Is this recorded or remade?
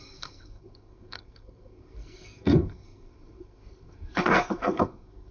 remade